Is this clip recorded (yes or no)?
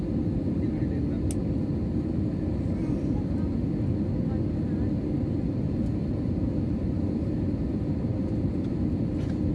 yes